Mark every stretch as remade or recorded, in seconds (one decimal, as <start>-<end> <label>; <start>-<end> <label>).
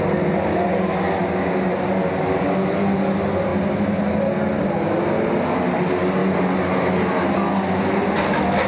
0.0-8.7 recorded